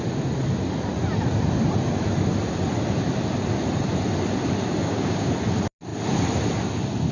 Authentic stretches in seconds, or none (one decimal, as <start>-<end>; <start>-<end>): 0.0-4.8; 5.3-7.1